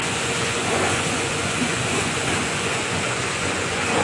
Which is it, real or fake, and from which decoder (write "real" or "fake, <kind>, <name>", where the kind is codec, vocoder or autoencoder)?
fake, vocoder, Vocos